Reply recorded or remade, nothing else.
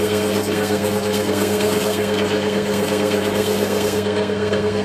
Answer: remade